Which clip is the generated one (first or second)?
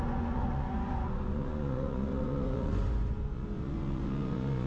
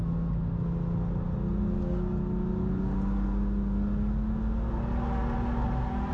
first